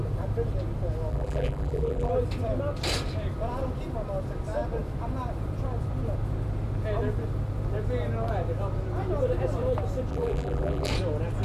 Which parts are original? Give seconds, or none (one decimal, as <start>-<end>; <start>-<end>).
0.0-1.1; 2.1-10.1; 10.9-11.4